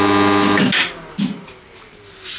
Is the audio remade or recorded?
recorded